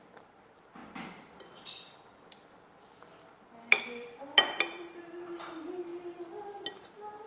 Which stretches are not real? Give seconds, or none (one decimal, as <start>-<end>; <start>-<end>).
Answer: none